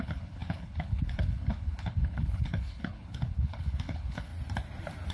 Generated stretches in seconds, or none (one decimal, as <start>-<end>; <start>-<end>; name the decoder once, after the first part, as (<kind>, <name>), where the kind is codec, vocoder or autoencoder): 0.0-4.3 (codec, HILCodec)